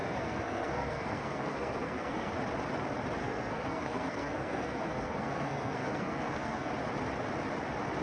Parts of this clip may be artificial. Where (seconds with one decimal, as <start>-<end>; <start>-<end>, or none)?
0.0-2.3; 3.2-6.7